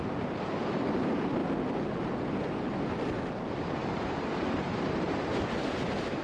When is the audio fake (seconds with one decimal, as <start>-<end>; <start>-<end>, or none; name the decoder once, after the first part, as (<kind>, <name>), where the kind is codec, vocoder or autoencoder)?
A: 0.0-1.4 (vocoder, BigVGAN v2); 3.3-6.2

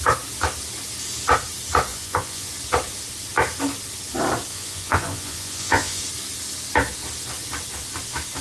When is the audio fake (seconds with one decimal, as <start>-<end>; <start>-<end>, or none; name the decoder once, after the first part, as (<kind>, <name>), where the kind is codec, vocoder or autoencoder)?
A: 1.9-2.5 (vocoder, Vocos); 4.5-6.0